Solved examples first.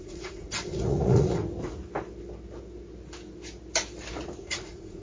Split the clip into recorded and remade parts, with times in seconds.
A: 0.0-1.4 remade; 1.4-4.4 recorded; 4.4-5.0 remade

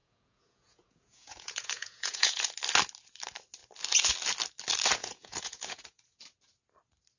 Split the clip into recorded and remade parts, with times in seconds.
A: 0.0-2.5 remade; 2.5-5.0 recorded; 5.0-6.2 remade; 6.2-7.2 recorded

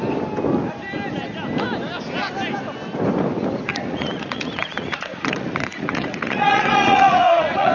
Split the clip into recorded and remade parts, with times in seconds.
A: 0.0-3.7 recorded; 3.7-7.7 remade

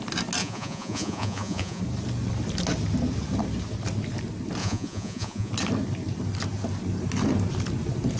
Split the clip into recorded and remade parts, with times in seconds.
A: 0.0-0.4 recorded; 0.4-1.8 remade; 1.8-4.6 recorded; 4.6-5.5 remade; 5.5-8.2 recorded

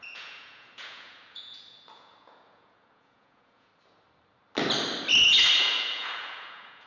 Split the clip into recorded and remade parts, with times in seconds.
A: 0.0-3.7 remade; 3.7-5.6 recorded; 5.6-6.9 remade

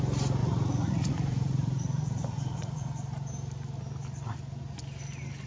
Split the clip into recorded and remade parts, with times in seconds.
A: 0.0-0.4 recorded; 0.4-2.9 remade; 2.9-5.5 recorded

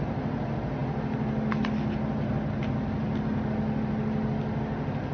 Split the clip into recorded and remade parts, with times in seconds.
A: 0.0-5.1 recorded